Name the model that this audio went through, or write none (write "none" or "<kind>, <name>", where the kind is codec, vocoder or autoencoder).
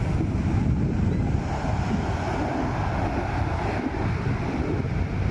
none